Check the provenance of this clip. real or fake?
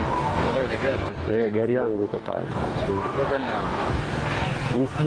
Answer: fake